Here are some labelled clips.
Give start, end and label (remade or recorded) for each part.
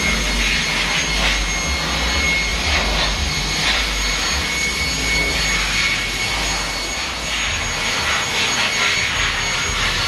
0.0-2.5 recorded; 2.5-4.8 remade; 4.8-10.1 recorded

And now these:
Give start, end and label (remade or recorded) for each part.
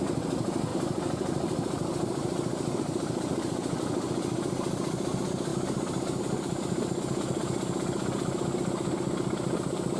0.0-0.7 recorded; 0.7-3.8 remade; 3.8-5.5 recorded; 5.5-6.2 remade; 6.2-10.0 recorded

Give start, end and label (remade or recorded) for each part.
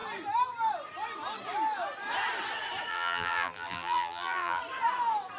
0.0-2.9 recorded; 2.9-4.6 remade; 4.6-5.4 recorded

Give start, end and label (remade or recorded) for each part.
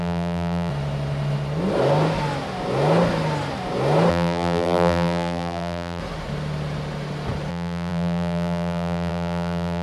0.0-0.7 remade; 0.7-4.1 recorded; 4.1-6.0 remade; 6.0-7.5 recorded; 7.5-9.8 remade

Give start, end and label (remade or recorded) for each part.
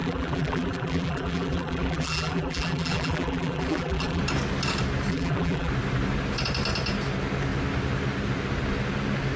0.0-4.2 remade; 4.2-5.1 recorded; 5.1-5.7 remade; 5.7-9.4 recorded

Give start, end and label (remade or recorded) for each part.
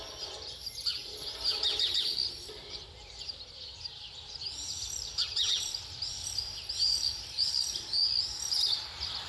0.0-8.0 remade; 8.0-8.5 recorded; 8.5-9.3 remade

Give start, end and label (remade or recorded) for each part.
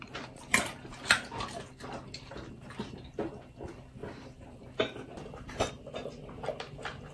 0.0-4.0 recorded; 4.0-4.6 remade; 4.6-7.1 recorded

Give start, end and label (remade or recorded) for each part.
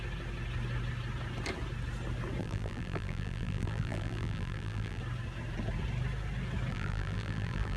0.0-2.4 recorded; 2.4-5.0 remade; 5.0-6.7 recorded; 6.7-7.8 remade